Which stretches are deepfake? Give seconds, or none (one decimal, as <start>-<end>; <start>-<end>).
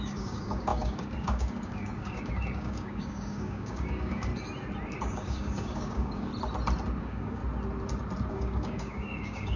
0.0-4.3; 5.0-6.3; 7.0-7.4; 8.3-9.6